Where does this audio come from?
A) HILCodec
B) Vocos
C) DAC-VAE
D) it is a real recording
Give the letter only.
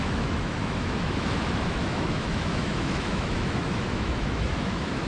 C